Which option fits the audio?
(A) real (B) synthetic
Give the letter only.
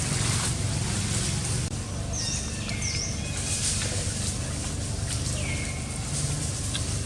A